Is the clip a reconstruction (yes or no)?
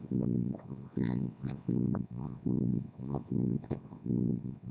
yes